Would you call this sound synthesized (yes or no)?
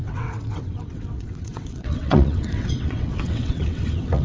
yes